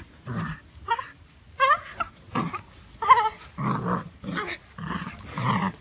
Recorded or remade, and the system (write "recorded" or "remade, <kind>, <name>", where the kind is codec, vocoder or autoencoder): recorded